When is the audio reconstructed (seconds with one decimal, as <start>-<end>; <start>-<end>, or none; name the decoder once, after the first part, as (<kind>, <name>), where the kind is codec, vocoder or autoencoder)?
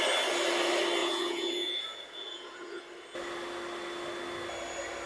1.0-2.8 (vocoder, Vocos)